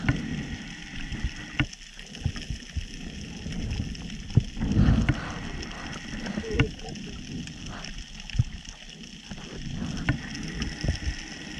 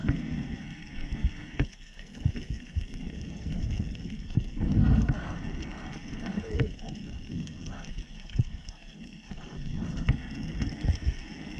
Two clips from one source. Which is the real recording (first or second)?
first